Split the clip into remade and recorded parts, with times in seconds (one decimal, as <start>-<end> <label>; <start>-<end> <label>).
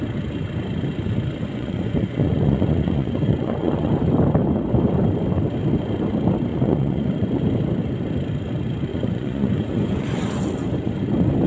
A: 0.0-1.5 recorded; 1.5-3.9 remade; 3.9-6.5 recorded; 6.5-7.4 remade; 7.4-8.9 recorded; 8.9-10.4 remade; 10.4-11.5 recorded